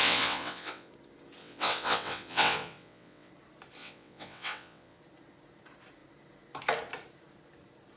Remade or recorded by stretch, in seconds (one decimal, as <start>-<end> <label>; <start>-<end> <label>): 0.0-0.9 remade; 0.9-1.4 recorded; 1.4-3.3 remade; 3.3-3.8 recorded; 3.8-5.0 remade; 5.0-8.0 recorded